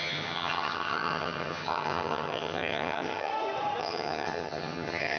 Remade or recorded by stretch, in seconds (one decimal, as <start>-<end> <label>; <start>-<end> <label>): 0.0-3.3 remade; 3.3-3.8 recorded; 3.8-5.2 remade